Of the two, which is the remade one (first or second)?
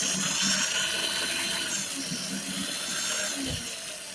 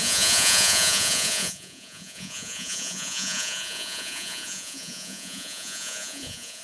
second